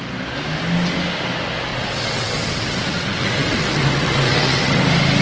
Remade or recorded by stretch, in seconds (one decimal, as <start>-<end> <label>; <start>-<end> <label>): 0.0-1.7 recorded; 1.7-4.8 remade; 4.8-5.2 recorded